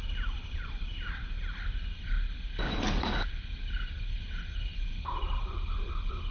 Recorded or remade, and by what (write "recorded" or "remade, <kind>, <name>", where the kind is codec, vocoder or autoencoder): recorded